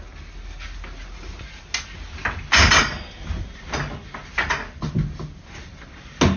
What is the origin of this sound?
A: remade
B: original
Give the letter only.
B